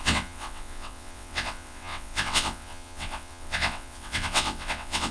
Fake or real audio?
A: fake